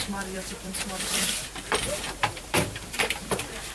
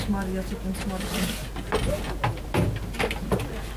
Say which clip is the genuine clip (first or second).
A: second